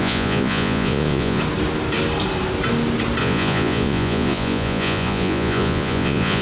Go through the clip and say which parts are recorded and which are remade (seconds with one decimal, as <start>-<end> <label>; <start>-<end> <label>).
0.0-1.4 remade; 1.4-3.2 recorded; 3.2-6.4 remade